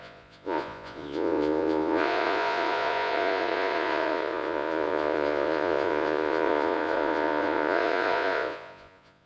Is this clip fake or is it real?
fake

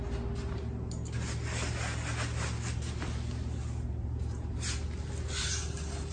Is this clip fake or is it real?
real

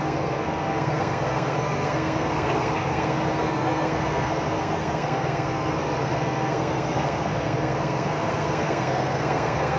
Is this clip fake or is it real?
fake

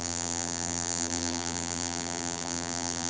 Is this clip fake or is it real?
fake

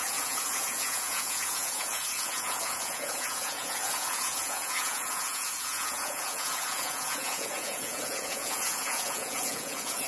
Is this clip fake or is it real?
fake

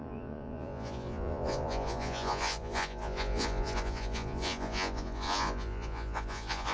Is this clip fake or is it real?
fake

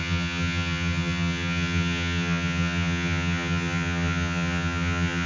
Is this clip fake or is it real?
fake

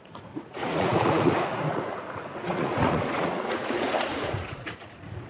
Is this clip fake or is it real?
fake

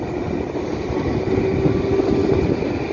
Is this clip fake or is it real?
real